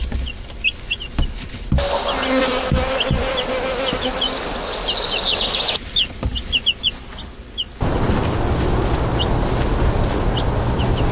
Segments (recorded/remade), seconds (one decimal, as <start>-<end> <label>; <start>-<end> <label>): 0.0-11.1 recorded